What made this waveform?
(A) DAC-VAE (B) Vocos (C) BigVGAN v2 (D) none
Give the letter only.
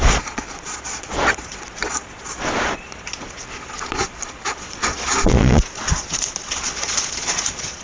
B